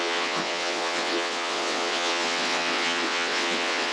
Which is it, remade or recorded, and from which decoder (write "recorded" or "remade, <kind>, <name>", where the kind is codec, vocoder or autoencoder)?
remade, vocoder, WaveNeXt